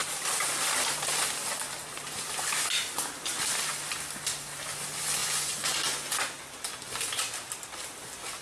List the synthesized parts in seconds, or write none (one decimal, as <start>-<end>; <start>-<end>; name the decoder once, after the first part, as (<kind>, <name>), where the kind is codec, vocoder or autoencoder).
5.2-5.8 (vocoder, Vocos)